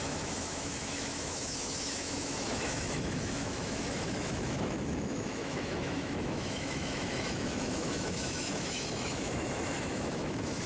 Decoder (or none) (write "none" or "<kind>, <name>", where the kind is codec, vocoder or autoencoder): autoencoder, DAC-VAE